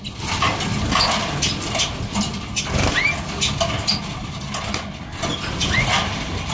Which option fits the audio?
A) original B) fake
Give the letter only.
A